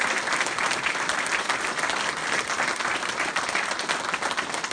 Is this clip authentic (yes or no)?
yes